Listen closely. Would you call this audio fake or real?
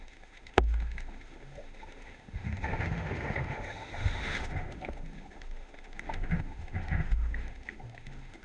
fake